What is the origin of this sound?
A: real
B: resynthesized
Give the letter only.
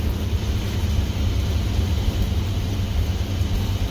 A